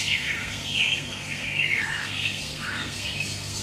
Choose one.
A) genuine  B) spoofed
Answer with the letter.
B